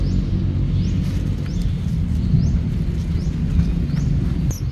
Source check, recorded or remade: recorded